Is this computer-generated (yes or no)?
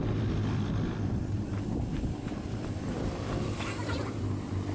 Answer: yes